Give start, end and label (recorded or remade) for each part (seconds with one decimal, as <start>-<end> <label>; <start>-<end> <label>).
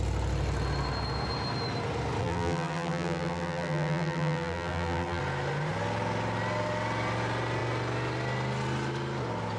0.0-2.2 recorded; 2.2-5.2 remade; 5.2-9.6 recorded